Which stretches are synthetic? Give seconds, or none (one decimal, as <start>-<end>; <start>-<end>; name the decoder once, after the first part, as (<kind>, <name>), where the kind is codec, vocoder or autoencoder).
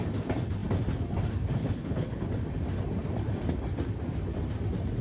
1.6-2.3 (codec, HILCodec)